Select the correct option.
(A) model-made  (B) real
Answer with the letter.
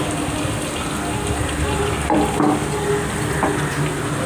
B